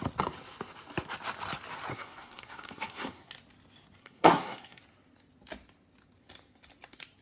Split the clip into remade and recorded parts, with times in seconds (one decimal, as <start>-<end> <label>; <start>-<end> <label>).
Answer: 0.0-1.9 recorded; 1.9-3.3 remade; 3.3-4.0 recorded; 4.0-4.8 remade; 4.8-7.2 recorded